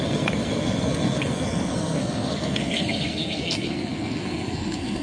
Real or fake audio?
fake